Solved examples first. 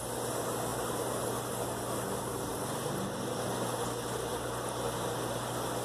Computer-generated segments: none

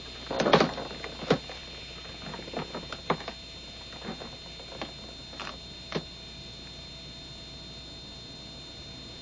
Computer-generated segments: none

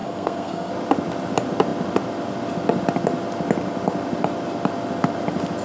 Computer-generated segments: 0.0-0.7 (codec, SNAC)

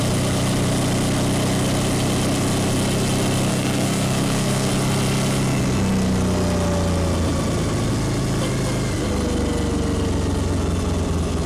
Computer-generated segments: 3.5-4.7 (codec, SNAC)

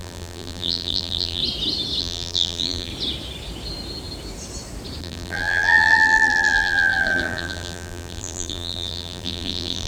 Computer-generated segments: 0.0-1.4 (vocoder, BigVGAN v2); 2.0-2.9; 5.0-9.9

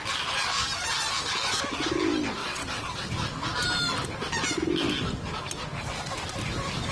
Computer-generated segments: 2.4-3.1 (vocoder, WaveNeXt)

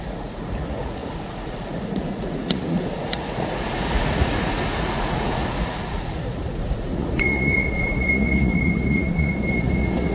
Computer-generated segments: 0.0-10.1 (vocoder, Vocos)

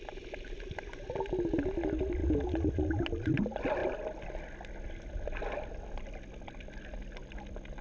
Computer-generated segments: none